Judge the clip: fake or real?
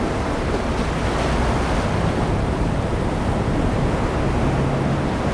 real